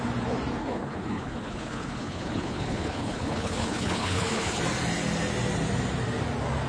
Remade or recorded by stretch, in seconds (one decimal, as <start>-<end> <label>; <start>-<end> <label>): 0.0-0.6 recorded; 0.6-4.6 remade; 4.6-6.7 recorded